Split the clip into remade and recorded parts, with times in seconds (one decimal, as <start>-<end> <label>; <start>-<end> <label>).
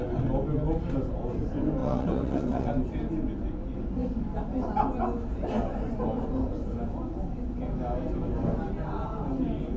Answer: 0.0-1.8 recorded; 1.8-2.7 remade; 2.7-9.8 recorded